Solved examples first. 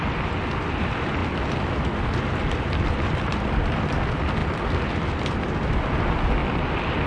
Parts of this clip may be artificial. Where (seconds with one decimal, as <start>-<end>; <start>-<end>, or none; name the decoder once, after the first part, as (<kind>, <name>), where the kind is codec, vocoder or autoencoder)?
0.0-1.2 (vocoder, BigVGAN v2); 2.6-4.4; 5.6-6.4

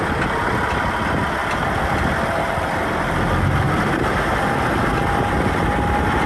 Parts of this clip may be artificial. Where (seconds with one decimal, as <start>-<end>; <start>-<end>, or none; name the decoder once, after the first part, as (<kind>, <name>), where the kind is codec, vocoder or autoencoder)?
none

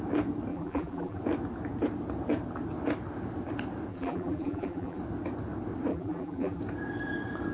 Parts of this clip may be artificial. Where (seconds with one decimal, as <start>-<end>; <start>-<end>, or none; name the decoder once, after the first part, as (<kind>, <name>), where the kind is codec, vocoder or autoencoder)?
0.5-1.2 (vocoder, BigVGAN v2); 3.9-5.0; 5.9-6.6

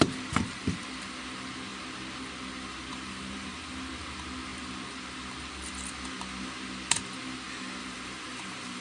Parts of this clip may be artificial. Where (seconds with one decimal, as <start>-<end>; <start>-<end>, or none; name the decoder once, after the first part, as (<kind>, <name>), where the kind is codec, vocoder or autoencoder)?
2.9-4.0 (vocoder, BigVGAN v2); 7.8-8.8

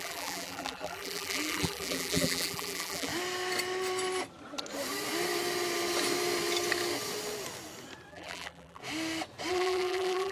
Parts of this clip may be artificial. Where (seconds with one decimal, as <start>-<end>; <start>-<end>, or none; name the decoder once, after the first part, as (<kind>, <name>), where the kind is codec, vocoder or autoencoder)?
0.0-3.1 (vocoder, BigVGAN v2); 8.1-8.8; 9.5-10.3

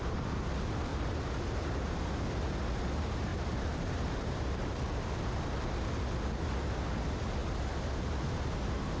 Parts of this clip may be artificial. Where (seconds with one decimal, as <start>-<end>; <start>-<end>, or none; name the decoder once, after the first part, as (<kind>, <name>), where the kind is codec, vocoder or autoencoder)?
0.9-2.1 (vocoder, BigVGAN v2); 3.3-5.8